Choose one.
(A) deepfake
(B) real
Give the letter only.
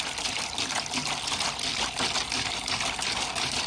B